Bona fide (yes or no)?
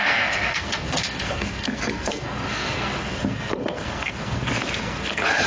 no